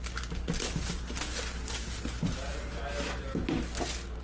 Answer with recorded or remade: recorded